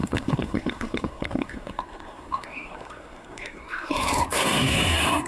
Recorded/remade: remade